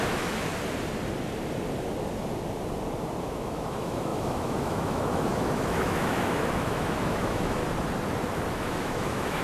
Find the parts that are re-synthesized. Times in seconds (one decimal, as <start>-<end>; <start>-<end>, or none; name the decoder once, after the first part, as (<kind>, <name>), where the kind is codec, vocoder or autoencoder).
0.0-0.5 (autoencoder, DAC-VAE); 3.2-7.6; 8.5-9.4